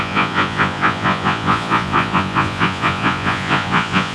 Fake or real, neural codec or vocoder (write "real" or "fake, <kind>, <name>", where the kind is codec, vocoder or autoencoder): fake, vocoder, Vocos